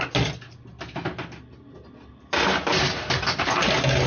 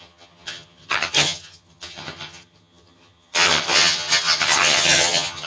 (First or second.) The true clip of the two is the first